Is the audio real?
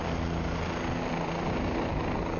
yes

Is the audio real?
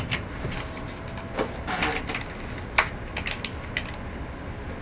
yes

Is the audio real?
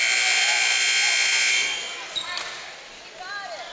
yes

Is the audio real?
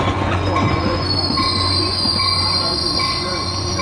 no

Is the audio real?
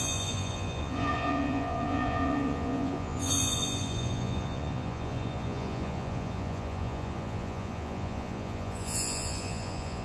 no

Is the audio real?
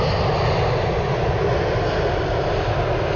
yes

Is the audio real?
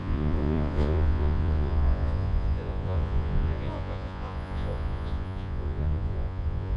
no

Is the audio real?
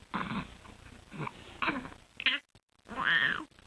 yes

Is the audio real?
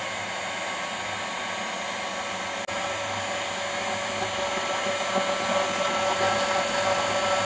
yes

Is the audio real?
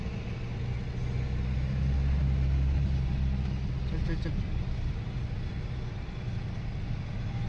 yes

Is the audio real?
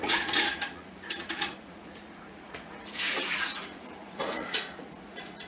no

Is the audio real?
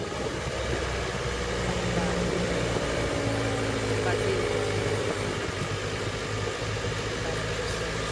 yes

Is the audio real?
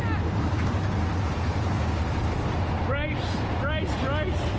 yes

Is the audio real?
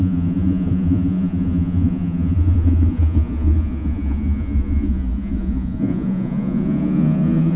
no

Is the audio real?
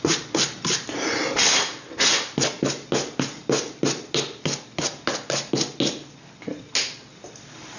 yes